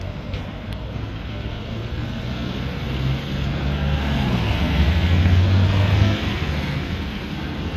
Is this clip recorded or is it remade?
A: remade